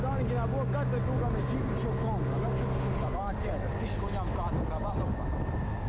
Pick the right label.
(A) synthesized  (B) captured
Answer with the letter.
B